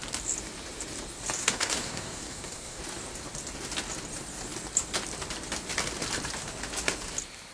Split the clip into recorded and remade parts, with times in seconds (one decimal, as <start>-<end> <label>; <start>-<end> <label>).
0.0-1.4 recorded; 1.4-2.8 remade; 2.8-7.5 recorded